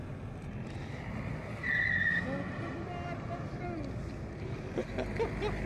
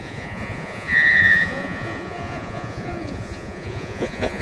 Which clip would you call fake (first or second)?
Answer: second